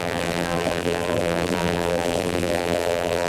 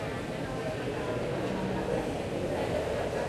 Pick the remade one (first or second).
first